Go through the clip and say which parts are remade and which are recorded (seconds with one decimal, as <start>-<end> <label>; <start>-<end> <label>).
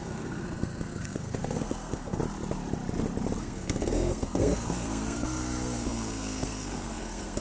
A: 0.0-2.2 remade; 2.2-3.4 recorded; 3.4-7.4 remade